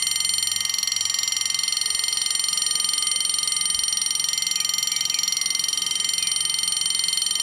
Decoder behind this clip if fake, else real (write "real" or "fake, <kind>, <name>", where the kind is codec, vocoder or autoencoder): real